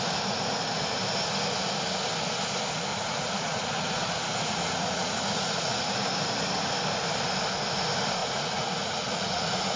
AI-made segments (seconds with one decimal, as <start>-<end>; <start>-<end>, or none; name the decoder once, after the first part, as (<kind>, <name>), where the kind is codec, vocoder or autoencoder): 2.9-5.9 (vocoder, Vocos); 8.2-9.8